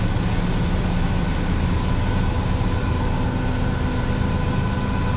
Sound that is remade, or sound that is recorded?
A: recorded